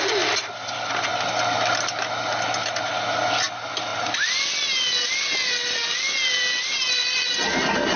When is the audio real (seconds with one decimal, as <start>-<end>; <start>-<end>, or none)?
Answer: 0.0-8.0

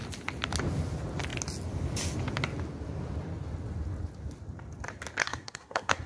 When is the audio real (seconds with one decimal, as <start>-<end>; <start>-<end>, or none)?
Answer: 0.0-5.2

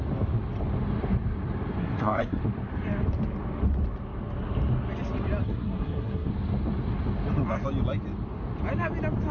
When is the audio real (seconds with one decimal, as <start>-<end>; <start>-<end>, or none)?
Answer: 0.0-1.8; 2.4-5.4; 6.3-9.3

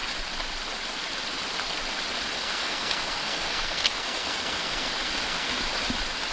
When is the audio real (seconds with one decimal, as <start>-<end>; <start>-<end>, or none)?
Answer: 0.0-2.4; 5.6-6.3

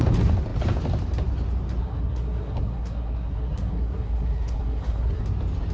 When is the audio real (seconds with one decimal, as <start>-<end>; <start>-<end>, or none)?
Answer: 0.0-1.8; 5.2-5.7

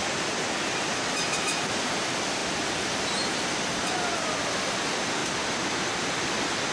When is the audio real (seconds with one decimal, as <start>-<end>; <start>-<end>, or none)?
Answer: 0.0-6.7